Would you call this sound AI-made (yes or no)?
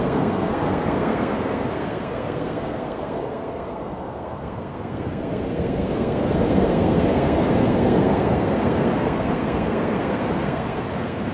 yes